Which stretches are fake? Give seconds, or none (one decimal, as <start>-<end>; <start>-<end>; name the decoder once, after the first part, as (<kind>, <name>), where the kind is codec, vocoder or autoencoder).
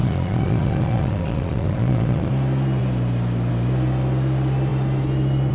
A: 0.0-2.3 (vocoder, Vocos)